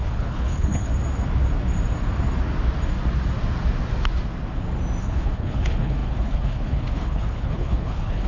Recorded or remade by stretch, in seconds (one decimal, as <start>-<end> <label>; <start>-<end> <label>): 0.0-0.9 remade; 0.9-5.0 recorded; 5.0-8.3 remade